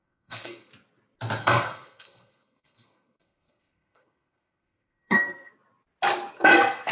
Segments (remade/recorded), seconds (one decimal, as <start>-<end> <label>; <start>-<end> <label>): 0.0-0.7 remade; 0.7-1.4 recorded; 1.4-5.5 remade; 5.5-6.9 recorded